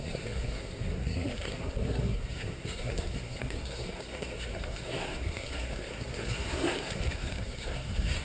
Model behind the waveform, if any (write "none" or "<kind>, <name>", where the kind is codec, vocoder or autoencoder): codec, SNAC